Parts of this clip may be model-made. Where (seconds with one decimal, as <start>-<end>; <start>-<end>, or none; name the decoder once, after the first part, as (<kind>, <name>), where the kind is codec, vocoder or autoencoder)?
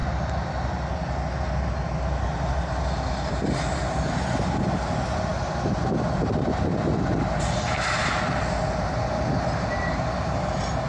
none